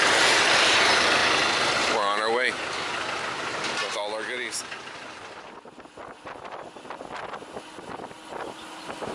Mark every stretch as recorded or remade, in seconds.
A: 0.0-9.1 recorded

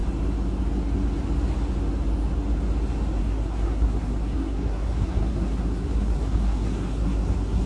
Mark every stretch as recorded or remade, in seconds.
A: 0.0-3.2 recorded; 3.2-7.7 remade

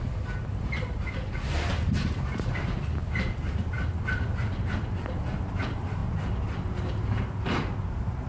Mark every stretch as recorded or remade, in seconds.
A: 0.0-8.3 recorded

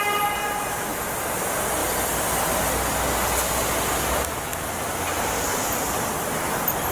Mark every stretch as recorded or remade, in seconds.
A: 0.0-0.9 recorded; 0.9-1.4 remade; 1.4-1.8 recorded; 1.8-2.6 remade; 2.6-6.9 recorded